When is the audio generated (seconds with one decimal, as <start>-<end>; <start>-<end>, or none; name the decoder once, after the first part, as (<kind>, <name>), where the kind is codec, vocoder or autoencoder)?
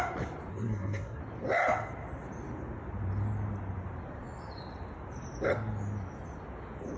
0.5-1.2 (codec, SNAC)